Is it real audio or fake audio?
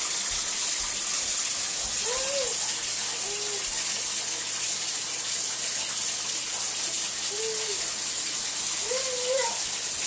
real